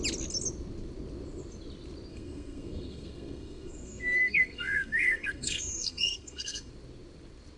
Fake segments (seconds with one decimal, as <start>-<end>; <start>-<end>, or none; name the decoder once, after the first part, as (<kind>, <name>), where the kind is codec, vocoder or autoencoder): 2.1-6.7 (codec, SNAC)